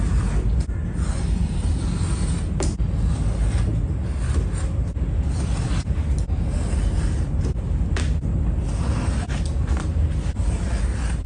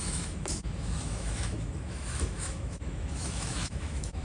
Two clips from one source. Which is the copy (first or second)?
second